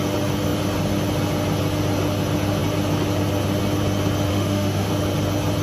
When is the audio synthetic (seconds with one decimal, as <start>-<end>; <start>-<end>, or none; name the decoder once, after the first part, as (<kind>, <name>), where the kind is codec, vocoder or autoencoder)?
4.3-4.9 (autoencoder, DAC-VAE)